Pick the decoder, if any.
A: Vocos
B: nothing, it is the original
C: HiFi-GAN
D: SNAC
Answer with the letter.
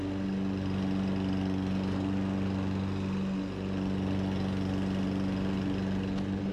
B